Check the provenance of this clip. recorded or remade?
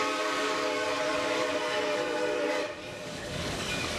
remade